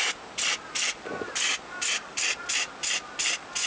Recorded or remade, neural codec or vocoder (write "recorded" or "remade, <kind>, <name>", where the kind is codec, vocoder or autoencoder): recorded